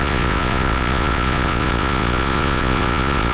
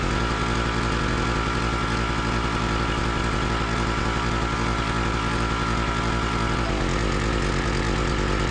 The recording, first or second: second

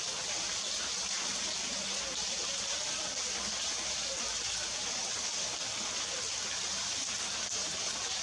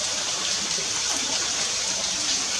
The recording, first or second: first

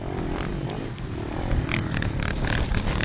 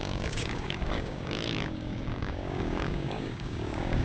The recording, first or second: first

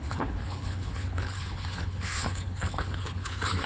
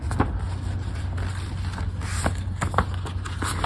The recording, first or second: second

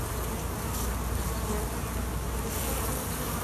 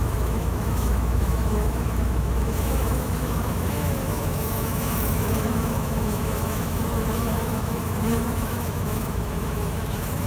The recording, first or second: first